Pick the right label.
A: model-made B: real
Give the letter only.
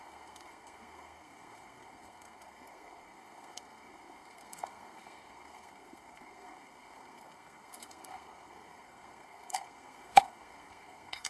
A